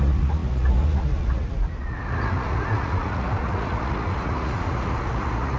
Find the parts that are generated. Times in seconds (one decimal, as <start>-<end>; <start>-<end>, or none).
0.0-5.6

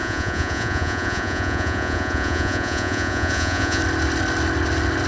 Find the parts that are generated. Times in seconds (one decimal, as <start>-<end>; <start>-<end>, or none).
0.0-3.8

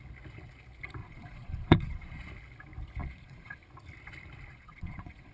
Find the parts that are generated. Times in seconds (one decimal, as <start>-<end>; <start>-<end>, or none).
1.0-2.3; 3.0-3.6; 4.5-5.3

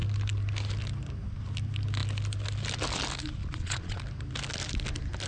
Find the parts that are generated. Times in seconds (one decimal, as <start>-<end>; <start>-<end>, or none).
3.4-4.0

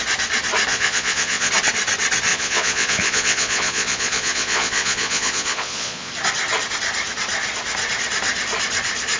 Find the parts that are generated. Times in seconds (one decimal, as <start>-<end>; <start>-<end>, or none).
0.7-1.5; 2.3-6.1

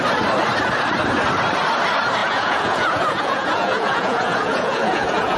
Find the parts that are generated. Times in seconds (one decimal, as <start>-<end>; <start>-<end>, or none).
2.2-5.4

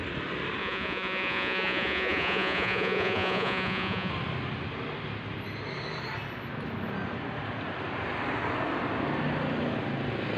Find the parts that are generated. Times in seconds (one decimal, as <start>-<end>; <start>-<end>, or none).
0.6-4.1

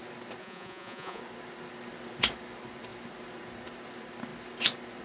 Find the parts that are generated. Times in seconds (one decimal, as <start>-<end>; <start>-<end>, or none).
0.4-1.2